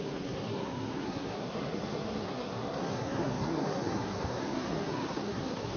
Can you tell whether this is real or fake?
fake